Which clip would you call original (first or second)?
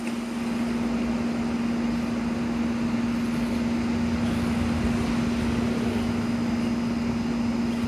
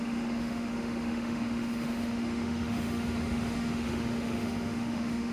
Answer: first